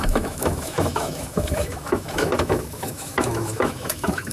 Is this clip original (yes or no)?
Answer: no